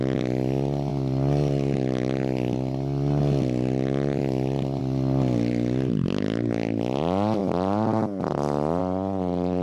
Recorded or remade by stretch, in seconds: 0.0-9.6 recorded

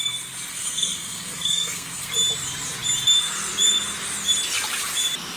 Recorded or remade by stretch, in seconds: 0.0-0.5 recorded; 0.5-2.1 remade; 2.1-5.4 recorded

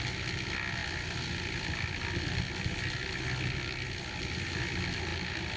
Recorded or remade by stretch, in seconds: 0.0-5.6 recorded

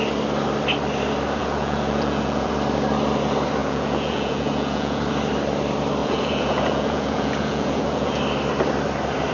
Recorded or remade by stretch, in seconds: 0.0-1.4 recorded; 1.4-2.5 remade; 2.5-3.6 recorded; 3.6-5.0 remade; 5.0-6.0 recorded; 6.0-8.2 remade; 8.2-9.3 recorded

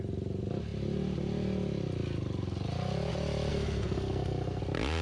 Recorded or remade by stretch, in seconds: 0.0-3.5 recorded; 3.5-4.6 remade; 4.6-5.0 recorded